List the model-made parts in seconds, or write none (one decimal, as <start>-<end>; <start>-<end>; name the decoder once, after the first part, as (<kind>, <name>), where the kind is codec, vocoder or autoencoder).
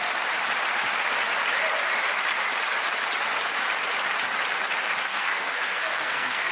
5.1-6.5 (codec, SNAC)